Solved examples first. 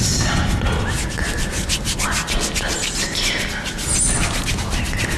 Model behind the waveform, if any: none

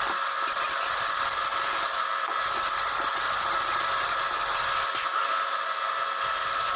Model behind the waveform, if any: none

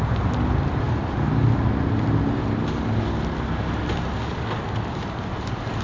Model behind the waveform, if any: none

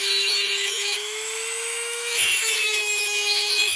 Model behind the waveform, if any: autoencoder, DAC-VAE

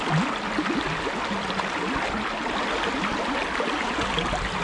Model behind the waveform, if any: none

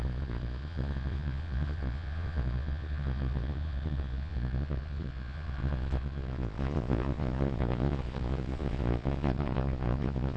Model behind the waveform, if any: vocoder, Vocos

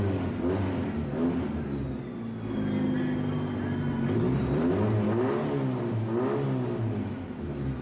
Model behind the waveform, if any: none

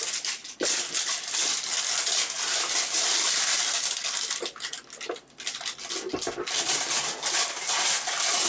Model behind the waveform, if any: none